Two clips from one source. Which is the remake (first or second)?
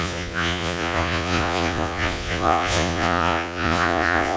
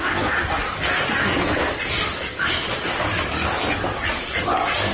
first